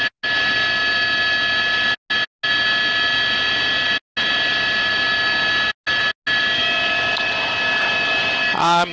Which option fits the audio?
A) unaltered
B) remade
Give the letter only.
A